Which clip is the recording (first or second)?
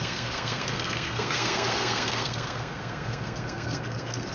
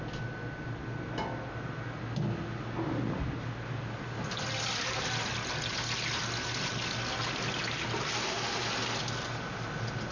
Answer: second